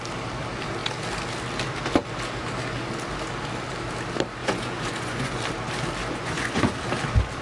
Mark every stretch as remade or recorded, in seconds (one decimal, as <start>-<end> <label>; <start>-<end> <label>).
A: 0.0-4.4 recorded; 4.4-5.4 remade; 5.4-6.0 recorded; 6.0-6.7 remade; 6.7-7.4 recorded